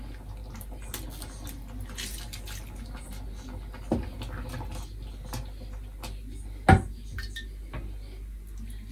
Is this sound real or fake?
real